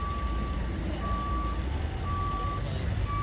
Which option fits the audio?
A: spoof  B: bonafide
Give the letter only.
B